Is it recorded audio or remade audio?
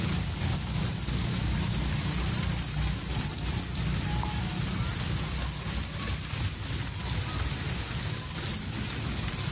recorded